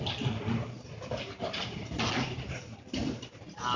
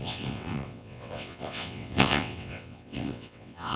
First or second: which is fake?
second